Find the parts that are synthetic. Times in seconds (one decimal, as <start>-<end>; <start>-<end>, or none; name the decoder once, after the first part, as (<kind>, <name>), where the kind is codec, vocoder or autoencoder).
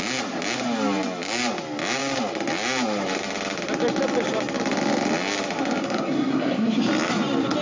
5.8-6.8 (codec, SNAC)